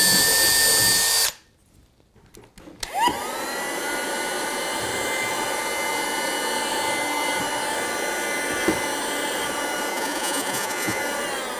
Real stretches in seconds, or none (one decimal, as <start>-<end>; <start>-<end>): 0.0-9.9; 11.0-11.6